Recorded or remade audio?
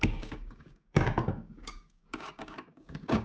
remade